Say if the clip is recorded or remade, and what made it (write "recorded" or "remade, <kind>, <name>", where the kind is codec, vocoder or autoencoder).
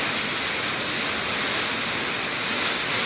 recorded